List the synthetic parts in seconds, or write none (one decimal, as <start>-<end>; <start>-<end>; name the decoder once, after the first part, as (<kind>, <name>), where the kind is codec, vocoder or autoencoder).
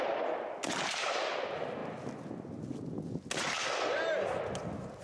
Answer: none